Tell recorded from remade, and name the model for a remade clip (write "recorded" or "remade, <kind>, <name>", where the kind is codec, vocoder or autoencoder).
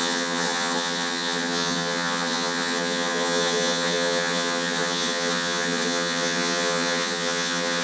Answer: remade, vocoder, HiFi-GAN